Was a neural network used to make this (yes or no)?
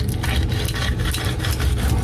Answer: no